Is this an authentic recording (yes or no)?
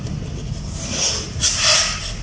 yes